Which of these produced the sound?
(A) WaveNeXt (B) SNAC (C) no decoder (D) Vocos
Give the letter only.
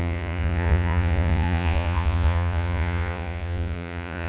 D